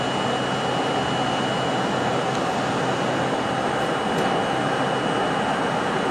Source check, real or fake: real